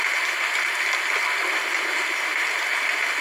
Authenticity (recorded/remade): recorded